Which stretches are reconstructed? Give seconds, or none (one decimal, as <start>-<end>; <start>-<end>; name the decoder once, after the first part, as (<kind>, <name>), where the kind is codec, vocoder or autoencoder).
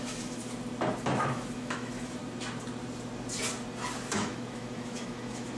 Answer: 0.0-0.4 (autoencoder, DAC-VAE); 1.0-2.2; 4.0-5.6